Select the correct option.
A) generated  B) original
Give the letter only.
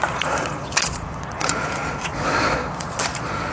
A